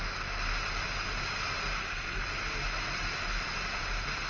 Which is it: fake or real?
real